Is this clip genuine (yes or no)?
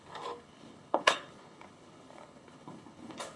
no